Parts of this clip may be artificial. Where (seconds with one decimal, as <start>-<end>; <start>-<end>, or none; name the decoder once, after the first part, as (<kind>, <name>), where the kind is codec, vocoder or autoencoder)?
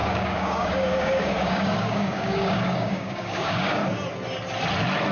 0.0-3.8 (codec, DAC)